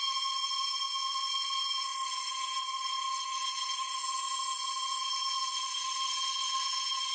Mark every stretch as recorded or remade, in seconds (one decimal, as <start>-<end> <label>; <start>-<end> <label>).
0.0-7.1 remade